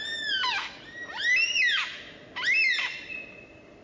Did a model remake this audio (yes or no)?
no